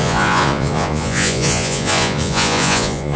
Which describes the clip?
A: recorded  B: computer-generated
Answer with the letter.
B